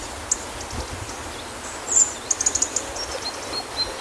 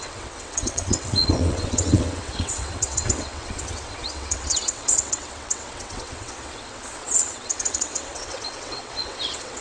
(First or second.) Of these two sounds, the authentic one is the first